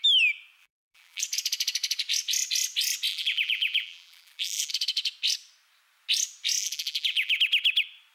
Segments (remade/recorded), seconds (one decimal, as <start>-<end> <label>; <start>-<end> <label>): 0.0-0.6 recorded; 0.6-1.2 remade; 1.2-3.1 recorded; 3.1-4.7 remade; 4.7-6.6 recorded; 6.6-7.4 remade; 7.4-8.1 recorded